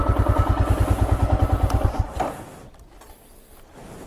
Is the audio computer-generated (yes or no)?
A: no